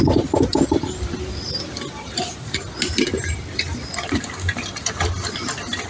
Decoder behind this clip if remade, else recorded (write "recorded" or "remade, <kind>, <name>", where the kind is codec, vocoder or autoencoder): recorded